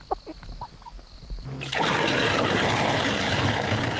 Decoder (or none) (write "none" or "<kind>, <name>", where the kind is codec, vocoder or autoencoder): none